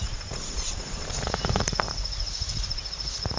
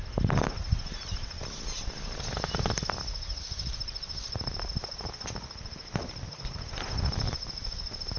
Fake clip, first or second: first